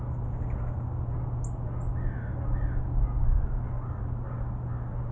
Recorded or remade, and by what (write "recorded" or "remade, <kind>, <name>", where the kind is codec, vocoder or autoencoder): recorded